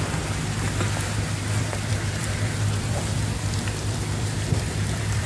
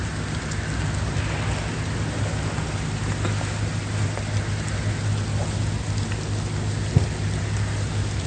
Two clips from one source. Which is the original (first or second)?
second